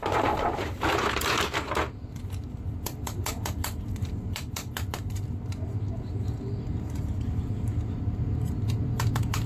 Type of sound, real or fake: fake